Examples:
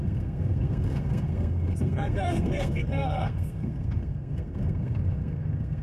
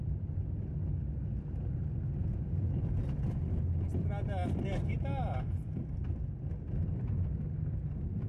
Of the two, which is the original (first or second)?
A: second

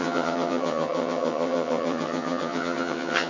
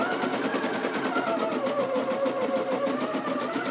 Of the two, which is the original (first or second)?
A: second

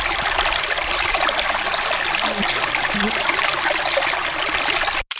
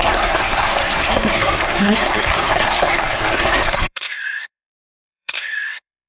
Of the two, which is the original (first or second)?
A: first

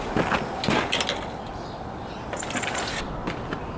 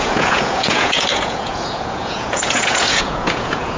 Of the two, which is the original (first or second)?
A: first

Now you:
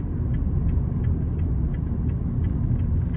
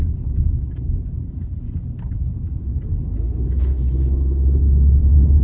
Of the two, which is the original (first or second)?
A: first